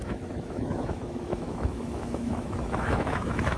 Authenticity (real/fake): fake